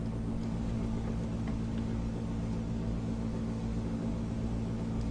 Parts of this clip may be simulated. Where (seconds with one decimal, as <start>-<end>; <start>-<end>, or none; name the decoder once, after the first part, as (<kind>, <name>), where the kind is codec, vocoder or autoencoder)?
0.4-1.1 (codec, DAC); 1.5-4.1

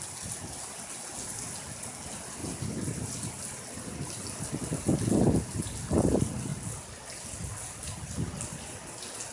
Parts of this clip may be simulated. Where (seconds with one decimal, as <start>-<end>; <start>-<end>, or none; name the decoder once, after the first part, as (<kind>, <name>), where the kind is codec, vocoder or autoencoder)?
2.4-4.5 (vocoder, BigVGAN v2)